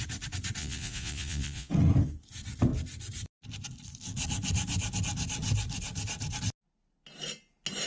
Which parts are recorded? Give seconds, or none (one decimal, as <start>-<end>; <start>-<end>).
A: 0.0-0.6; 1.7-7.9